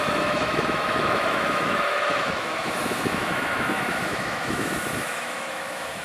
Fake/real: fake